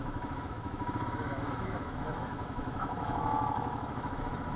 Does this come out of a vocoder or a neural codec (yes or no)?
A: yes